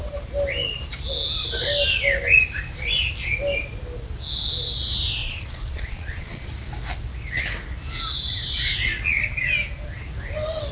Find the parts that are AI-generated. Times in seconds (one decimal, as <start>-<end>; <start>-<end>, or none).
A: 5.2-6.5